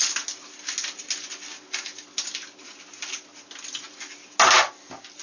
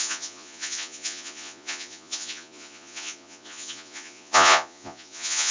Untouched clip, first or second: first